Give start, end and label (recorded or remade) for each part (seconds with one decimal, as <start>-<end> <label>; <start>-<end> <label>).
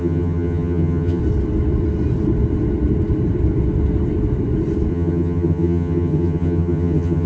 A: 0.0-1.2 remade; 1.2-4.9 recorded; 4.9-7.3 remade